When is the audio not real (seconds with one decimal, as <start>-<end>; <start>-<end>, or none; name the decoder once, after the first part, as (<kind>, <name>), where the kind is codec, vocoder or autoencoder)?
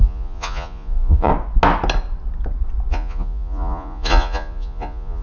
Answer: 0.0-1.3 (vocoder, Vocos); 2.9-5.2